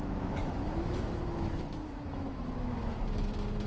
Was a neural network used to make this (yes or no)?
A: yes